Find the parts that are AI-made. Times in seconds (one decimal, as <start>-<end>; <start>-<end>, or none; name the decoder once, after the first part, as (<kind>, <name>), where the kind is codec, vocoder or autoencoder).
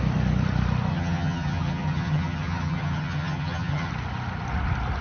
0.9-3.9 (vocoder, HiFi-GAN)